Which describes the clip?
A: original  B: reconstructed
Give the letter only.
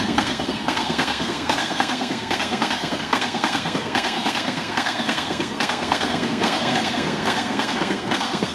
B